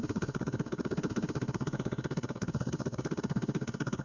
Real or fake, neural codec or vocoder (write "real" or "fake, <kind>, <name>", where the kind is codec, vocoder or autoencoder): fake, codec, SNAC